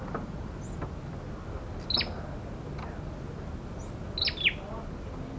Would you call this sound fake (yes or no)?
no